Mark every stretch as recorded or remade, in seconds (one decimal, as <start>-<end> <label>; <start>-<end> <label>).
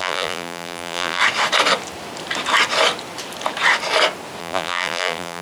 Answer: 0.0-1.2 remade; 1.2-4.4 recorded; 4.4-5.4 remade